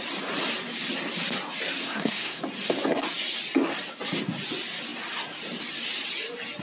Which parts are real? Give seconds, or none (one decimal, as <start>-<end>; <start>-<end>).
0.0-1.8; 2.4-6.6